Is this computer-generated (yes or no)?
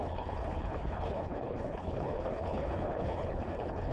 yes